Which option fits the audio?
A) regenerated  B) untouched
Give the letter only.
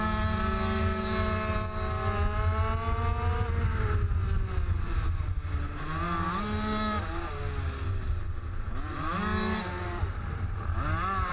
B